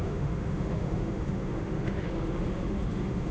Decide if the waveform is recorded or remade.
remade